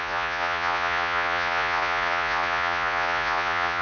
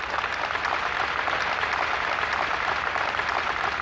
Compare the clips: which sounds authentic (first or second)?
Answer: second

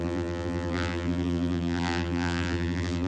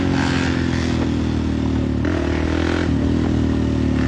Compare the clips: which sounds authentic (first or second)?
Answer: second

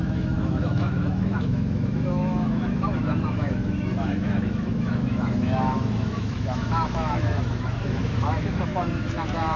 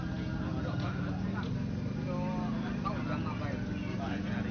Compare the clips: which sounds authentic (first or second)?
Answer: second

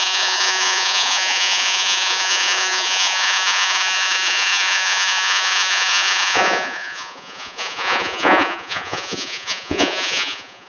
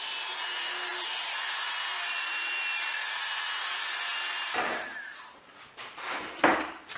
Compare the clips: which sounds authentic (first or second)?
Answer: second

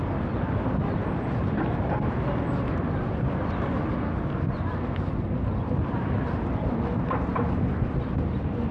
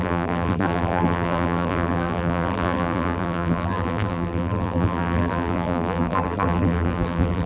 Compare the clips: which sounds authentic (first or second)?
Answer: first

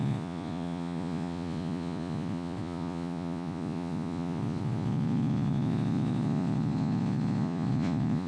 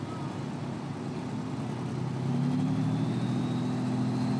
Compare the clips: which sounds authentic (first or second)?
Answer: second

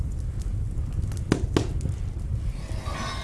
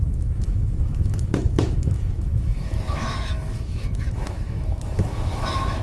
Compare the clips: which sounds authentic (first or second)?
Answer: first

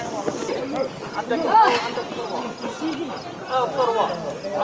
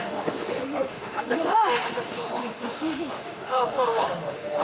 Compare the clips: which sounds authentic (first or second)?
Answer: first